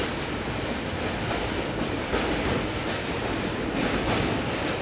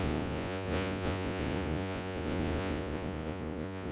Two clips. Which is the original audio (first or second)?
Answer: first